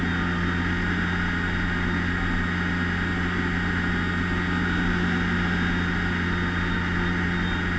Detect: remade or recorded recorded